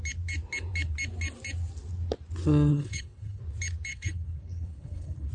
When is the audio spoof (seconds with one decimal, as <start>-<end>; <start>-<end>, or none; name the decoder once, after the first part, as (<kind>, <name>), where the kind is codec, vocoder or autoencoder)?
2.7-3.4 (codec, HILCodec); 3.9-5.3